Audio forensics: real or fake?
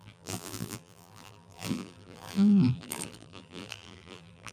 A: fake